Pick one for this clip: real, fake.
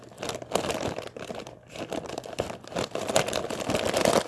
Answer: real